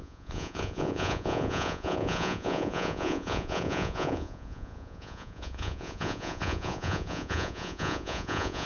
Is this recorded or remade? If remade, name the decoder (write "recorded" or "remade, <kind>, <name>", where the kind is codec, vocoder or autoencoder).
remade, vocoder, Vocos